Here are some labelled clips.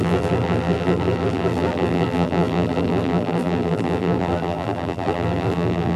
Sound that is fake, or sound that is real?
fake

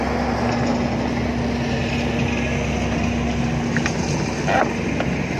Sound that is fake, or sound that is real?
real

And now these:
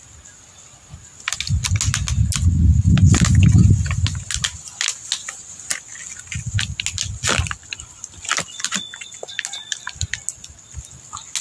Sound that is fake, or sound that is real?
real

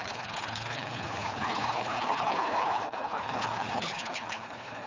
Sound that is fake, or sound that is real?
fake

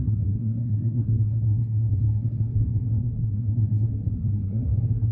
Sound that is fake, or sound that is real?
fake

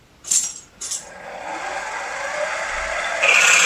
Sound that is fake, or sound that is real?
fake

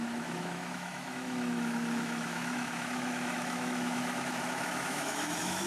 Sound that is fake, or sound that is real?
fake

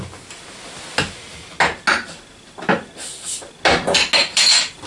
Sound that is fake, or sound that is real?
real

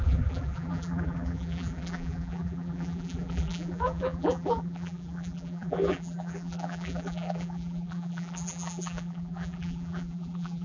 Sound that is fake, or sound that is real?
fake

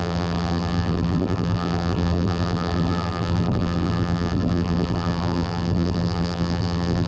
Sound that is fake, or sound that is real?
fake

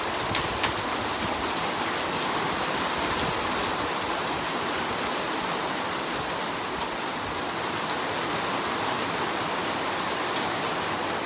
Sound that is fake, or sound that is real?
real